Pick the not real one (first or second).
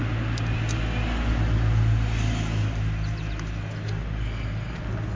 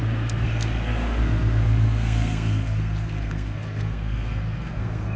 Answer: second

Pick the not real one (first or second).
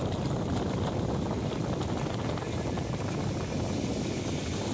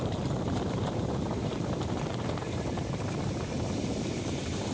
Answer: second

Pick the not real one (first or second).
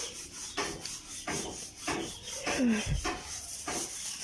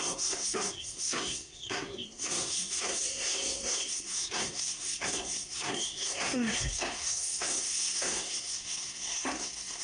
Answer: second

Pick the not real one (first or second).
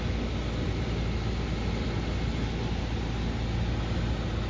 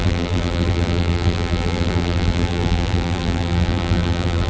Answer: second